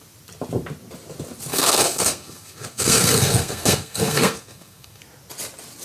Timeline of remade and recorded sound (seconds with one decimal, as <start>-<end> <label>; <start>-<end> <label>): 0.0-1.5 recorded; 1.5-5.0 remade; 5.0-5.8 recorded